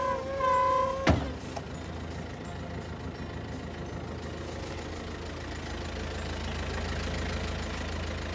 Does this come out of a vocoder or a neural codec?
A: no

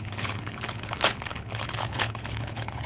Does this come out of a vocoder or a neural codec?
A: yes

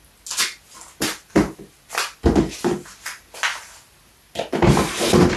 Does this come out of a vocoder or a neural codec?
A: no